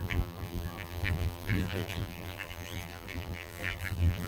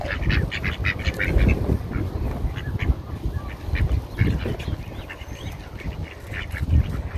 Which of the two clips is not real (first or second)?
first